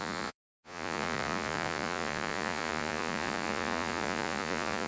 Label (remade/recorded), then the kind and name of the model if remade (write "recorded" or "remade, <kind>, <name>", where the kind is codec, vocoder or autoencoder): remade, vocoder, Vocos